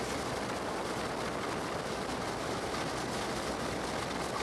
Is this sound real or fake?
real